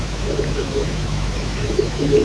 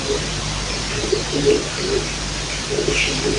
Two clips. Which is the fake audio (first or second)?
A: first